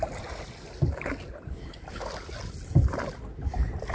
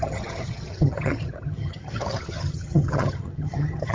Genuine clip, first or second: first